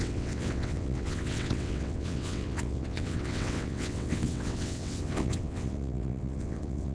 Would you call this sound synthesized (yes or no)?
yes